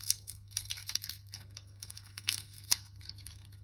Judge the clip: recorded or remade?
remade